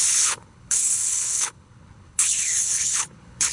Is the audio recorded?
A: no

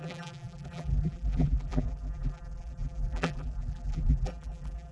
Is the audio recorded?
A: no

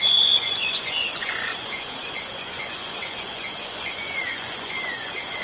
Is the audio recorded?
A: no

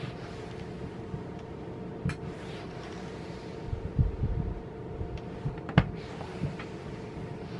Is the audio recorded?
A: yes